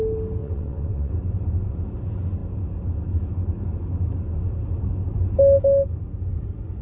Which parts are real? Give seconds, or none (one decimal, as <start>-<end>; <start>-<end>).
0.0-0.4; 1.1-6.8